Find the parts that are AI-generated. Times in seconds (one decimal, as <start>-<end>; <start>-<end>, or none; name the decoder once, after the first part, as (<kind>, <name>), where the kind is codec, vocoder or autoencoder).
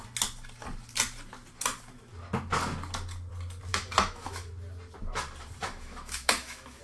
3.7-4.5 (autoencoder, DAC-VAE); 5.6-6.8